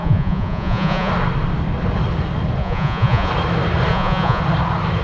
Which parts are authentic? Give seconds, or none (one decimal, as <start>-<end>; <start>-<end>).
1.1-2.6; 3.3-3.9; 4.4-5.0